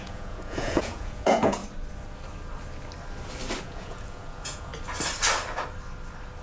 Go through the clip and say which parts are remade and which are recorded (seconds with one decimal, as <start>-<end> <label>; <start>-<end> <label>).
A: 0.0-1.6 remade; 1.6-3.6 recorded; 3.6-4.7 remade; 4.7-6.4 recorded